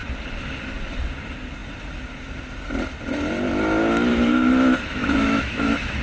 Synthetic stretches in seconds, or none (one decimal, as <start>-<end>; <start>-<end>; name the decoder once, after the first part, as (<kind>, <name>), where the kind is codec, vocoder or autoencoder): 4.1-6.0 (autoencoder, DAC-VAE)